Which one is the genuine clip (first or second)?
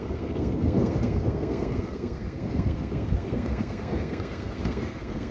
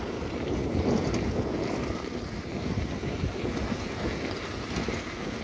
second